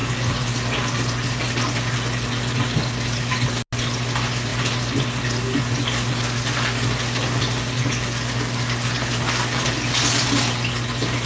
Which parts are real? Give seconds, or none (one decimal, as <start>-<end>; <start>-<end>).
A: 0.0-11.3